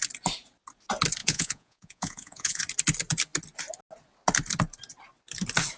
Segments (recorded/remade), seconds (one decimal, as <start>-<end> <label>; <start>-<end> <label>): 0.0-1.2 recorded; 1.2-2.6 remade; 2.6-5.8 recorded

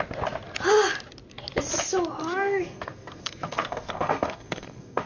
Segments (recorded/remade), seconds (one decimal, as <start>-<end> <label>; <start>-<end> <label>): 0.0-2.2 recorded; 2.2-5.1 remade

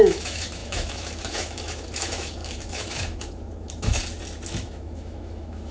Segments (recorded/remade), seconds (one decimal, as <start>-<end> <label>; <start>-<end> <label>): 0.0-4.0 remade; 4.0-4.6 recorded; 4.6-5.7 remade

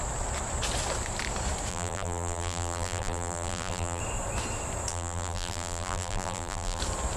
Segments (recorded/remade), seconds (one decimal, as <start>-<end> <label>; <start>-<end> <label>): 0.0-1.7 recorded; 1.7-4.0 remade; 4.0-4.9 recorded; 4.9-6.8 remade; 6.8-7.2 recorded

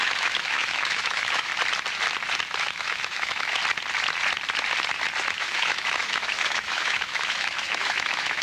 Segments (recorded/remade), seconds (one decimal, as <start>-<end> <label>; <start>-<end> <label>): 0.0-1.5 remade; 1.5-2.6 recorded; 2.6-3.6 remade; 3.6-5.3 recorded; 5.3-8.4 remade

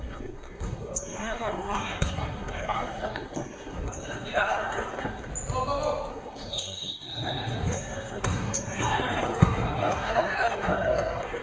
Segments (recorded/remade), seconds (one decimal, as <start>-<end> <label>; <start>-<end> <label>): 0.0-5.3 remade; 5.3-6.1 recorded; 6.1-11.4 remade

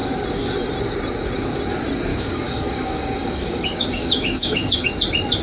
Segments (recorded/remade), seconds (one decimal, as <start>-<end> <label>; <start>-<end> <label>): 0.0-2.1 recorded; 2.1-4.9 remade; 4.9-5.4 recorded

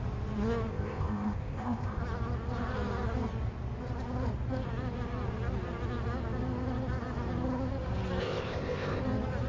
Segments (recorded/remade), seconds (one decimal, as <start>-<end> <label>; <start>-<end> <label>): 0.0-0.7 recorded; 0.7-2.0 remade; 2.0-8.2 recorded; 8.2-9.0 remade; 9.0-9.5 recorded